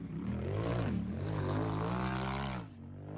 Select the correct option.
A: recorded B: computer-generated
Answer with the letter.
A